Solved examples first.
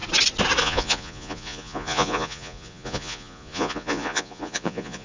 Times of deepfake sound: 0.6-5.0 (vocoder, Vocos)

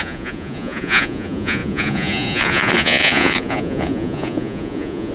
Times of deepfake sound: 0.0-5.1 (vocoder, Vocos)

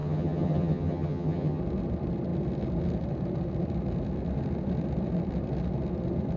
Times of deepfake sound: 0.0-1.6 (vocoder, HiFi-GAN)

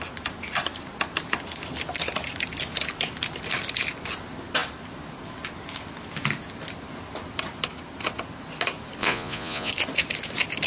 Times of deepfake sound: 9.0-9.7 (vocoder, Vocos)

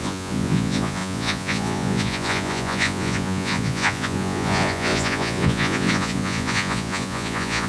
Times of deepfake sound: 0.0-7.7 (vocoder, Vocos)

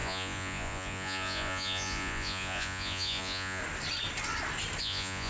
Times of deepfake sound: 0.0-3.6 (vocoder, Vocos); 4.8-5.3